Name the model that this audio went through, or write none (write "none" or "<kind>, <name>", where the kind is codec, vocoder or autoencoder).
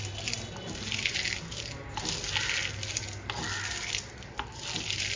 none